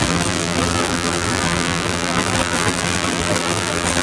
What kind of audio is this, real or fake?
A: fake